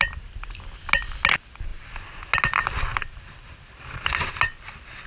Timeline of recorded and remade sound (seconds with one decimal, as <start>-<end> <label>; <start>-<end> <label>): 0.0-5.1 recorded